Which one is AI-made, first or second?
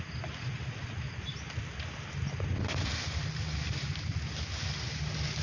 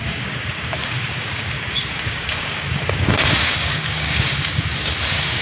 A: second